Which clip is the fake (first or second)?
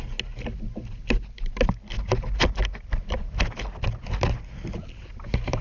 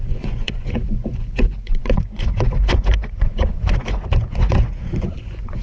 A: second